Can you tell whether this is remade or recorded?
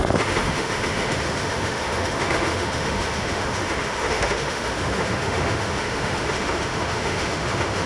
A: remade